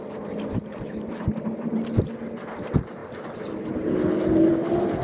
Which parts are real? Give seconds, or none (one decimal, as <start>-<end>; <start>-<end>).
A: 0.0-5.0